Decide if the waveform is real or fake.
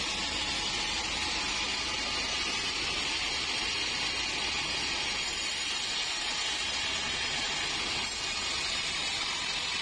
real